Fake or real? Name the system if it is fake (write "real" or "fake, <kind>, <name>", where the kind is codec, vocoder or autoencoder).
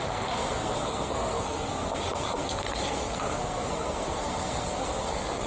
fake, codec, SNAC